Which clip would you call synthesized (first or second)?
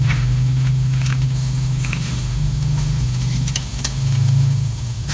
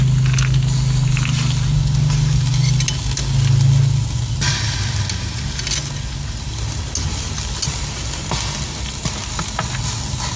first